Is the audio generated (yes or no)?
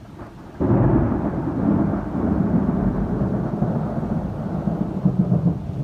no